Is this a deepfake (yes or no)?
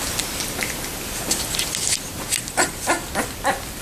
no